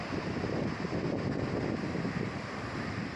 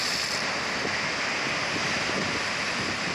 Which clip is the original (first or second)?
second